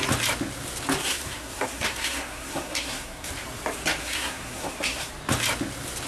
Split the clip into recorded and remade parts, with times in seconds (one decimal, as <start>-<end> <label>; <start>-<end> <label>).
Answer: 0.0-1.0 recorded; 1.0-3.3 remade; 3.3-4.0 recorded; 4.0-5.1 remade; 5.1-6.1 recorded